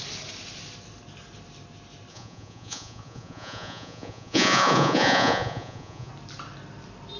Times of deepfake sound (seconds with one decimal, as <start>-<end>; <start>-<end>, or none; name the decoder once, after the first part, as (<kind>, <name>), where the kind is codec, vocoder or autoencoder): 2.1-6.1 (vocoder, Vocos)